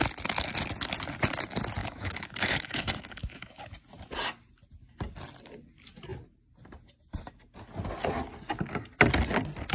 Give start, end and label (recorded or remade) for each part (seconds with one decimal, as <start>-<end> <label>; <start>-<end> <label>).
0.0-1.8 recorded; 1.8-3.6 remade; 3.6-9.7 recorded